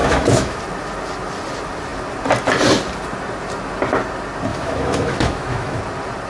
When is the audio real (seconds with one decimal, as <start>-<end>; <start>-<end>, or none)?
0.6-4.5; 5.8-6.3